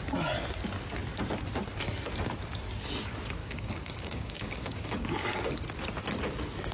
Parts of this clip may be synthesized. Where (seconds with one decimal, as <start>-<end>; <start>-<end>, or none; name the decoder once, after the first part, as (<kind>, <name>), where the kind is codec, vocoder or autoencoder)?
3.4-5.5 (codec, DAC)